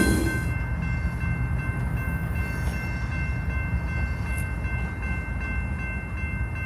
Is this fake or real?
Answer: real